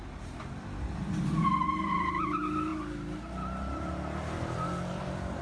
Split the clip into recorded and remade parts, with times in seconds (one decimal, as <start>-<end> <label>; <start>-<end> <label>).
0.0-5.4 recorded